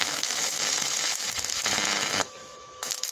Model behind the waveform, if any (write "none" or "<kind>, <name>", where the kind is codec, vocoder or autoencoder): autoencoder, DAC-VAE